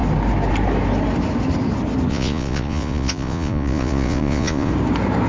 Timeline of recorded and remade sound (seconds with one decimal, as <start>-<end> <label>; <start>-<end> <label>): 0.0-2.1 recorded; 2.1-4.7 remade; 4.7-5.3 recorded